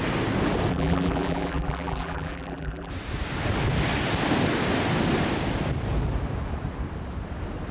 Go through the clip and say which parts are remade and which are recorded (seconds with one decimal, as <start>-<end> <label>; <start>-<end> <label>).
0.0-0.7 recorded; 0.7-2.9 remade; 2.9-7.7 recorded